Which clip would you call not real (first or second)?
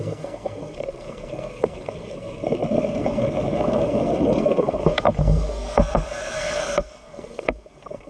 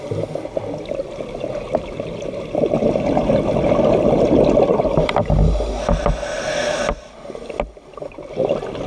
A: first